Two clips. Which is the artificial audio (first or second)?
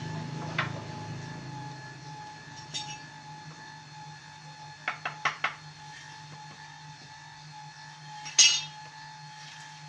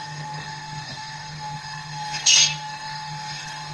second